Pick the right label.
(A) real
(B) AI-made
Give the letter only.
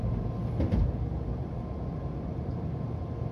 A